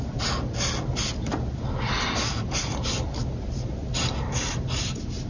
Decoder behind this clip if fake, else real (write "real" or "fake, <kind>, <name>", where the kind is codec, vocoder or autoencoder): real